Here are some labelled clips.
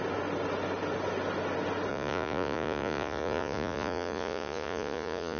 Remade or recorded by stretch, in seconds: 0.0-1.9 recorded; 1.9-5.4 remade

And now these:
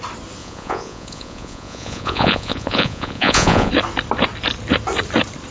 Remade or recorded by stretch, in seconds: 0.0-0.4 recorded; 0.4-3.7 remade; 3.7-5.5 recorded

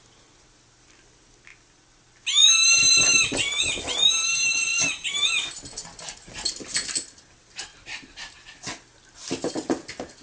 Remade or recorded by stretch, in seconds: 0.0-10.2 recorded

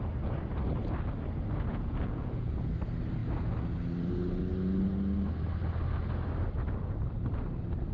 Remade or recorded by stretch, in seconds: 0.0-1.7 recorded; 1.7-2.7 remade; 2.7-7.9 recorded

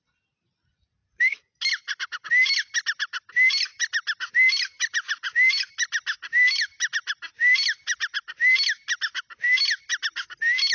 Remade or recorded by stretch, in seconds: 0.0-10.7 recorded

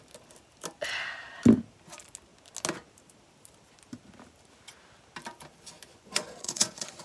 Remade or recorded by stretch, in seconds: 0.0-5.9 recorded; 5.9-7.0 remade